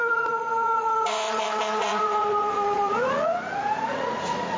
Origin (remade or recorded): remade